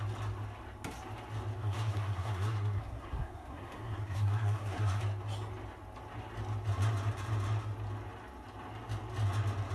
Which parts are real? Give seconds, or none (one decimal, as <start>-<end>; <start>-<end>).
0.0-1.6; 5.0-9.7